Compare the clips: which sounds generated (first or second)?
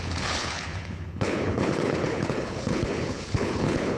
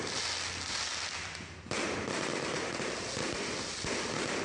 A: first